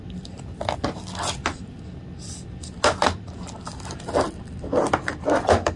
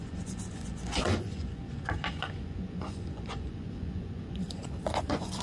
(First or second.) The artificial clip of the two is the second